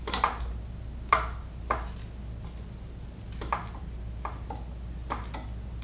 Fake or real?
real